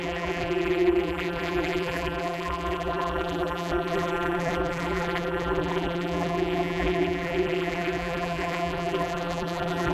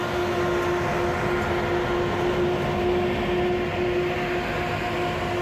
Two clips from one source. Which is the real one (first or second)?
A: second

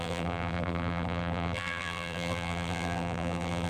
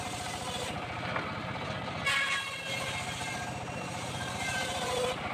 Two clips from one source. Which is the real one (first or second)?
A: second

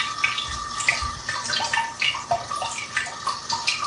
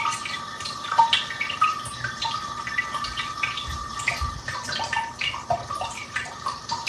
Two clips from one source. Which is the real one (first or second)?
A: first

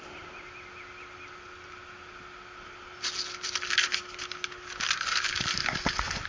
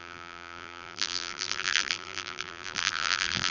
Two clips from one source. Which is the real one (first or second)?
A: first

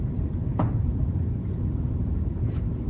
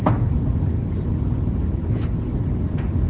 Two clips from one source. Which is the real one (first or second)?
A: second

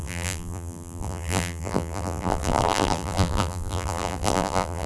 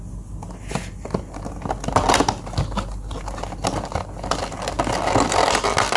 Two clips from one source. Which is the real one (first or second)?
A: second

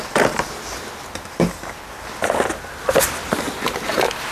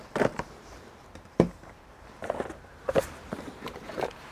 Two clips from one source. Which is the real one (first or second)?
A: first